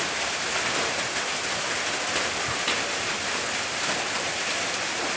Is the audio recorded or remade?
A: recorded